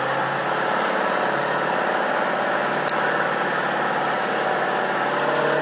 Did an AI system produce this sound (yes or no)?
no